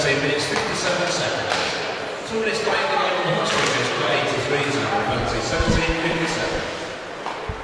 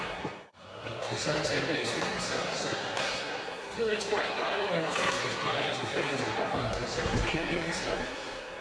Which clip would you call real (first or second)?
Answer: first